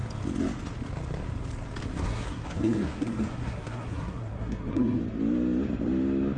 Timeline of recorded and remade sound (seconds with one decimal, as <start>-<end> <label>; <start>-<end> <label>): 0.0-1.9 recorded; 1.9-5.0 remade; 5.0-6.4 recorded